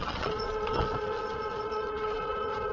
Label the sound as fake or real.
fake